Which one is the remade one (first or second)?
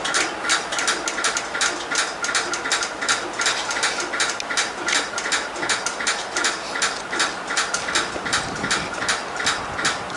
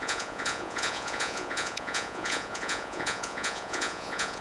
second